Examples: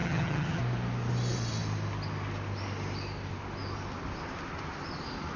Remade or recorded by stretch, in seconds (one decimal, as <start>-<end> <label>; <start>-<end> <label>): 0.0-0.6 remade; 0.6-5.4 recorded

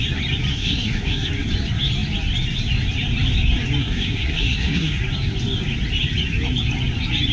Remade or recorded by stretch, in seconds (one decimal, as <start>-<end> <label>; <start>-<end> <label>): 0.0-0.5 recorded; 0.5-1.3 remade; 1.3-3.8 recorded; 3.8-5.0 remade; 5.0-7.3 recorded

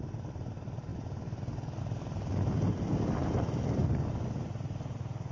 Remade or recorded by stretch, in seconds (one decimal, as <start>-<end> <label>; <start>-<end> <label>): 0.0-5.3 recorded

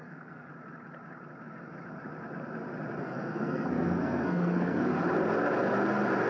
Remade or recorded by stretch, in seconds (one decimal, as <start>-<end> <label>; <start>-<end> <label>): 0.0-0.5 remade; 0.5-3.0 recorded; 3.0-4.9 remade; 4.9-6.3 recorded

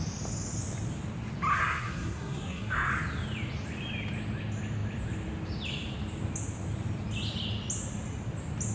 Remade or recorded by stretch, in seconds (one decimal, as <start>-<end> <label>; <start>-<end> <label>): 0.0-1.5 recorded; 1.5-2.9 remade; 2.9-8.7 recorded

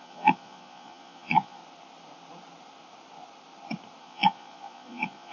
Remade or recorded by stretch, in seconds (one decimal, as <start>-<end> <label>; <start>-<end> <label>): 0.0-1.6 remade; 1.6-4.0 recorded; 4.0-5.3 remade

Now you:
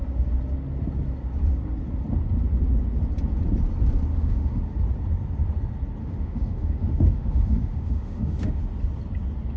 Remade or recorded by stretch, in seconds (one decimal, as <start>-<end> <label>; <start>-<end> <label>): 0.0-4.1 recorded; 4.1-4.6 remade; 4.6-6.0 recorded; 6.0-8.6 remade; 8.6-9.6 recorded